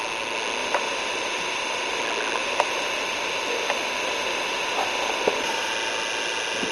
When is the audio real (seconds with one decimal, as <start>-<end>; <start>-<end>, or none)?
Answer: 0.0-0.6; 2.0-2.4; 5.7-6.7